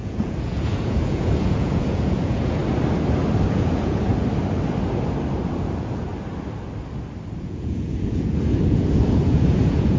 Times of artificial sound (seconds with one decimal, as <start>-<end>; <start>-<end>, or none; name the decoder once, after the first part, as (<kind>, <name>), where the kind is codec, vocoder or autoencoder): 0.0-2.6 (vocoder, Vocos); 3.5-4.1; 5.5-6.1; 7.4-10.0